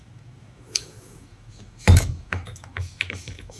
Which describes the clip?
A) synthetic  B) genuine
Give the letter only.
A